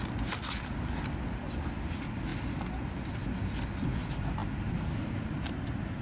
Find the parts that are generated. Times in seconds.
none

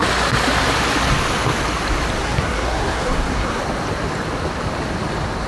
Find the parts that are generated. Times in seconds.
2.2-3.6 (codec, SNAC)

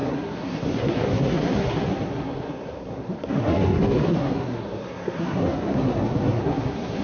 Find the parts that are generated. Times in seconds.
0.0-7.0 (codec, SNAC)